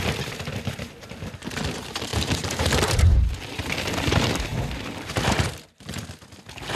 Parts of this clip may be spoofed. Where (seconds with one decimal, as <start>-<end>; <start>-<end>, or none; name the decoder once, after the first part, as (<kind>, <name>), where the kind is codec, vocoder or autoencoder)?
2.1-3.2 (vocoder, BigVGAN v2)